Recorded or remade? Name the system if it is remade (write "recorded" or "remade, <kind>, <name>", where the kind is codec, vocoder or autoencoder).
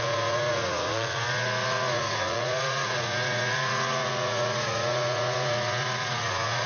remade, vocoder, Vocos